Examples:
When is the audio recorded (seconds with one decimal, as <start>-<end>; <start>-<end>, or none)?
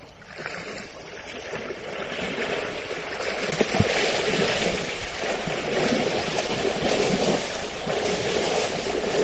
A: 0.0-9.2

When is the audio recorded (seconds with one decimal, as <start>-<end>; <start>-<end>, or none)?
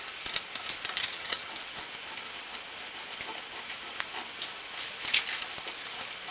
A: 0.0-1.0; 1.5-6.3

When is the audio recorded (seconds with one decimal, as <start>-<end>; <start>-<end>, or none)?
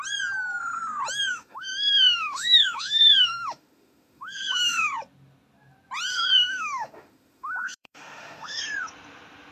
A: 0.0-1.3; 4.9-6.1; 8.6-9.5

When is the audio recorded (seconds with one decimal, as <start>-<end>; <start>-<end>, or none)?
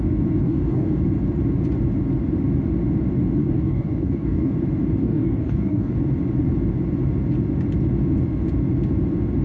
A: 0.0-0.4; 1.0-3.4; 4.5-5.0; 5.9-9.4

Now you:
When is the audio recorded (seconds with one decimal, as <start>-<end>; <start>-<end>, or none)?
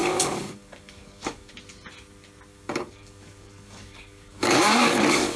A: 1.5-2.5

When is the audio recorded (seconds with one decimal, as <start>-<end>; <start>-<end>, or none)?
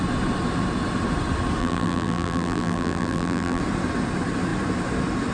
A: 0.0-1.6; 3.6-5.3